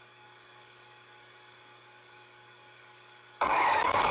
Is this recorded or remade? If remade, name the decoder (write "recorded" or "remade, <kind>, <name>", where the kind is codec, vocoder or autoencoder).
remade, codec, DAC